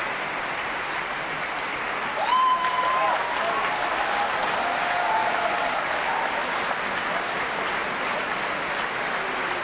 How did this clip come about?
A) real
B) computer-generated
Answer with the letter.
A